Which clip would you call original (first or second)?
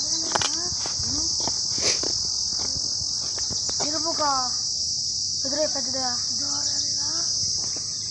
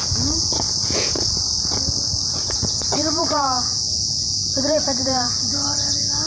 first